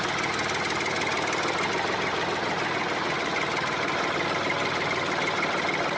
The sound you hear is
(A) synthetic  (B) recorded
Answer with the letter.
B